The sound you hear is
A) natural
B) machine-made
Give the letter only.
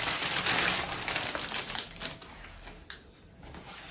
A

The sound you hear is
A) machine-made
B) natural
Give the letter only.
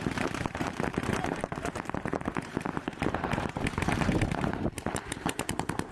A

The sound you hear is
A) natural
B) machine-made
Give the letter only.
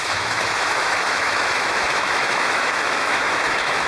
B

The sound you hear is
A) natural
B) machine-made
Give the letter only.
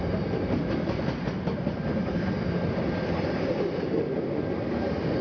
A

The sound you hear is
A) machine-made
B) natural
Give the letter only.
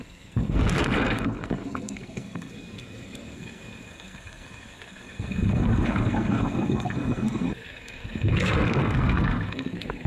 A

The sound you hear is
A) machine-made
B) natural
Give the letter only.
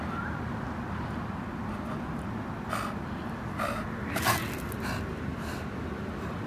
B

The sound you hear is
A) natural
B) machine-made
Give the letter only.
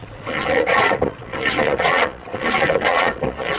B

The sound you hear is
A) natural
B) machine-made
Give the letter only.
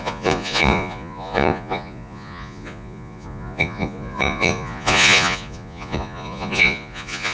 B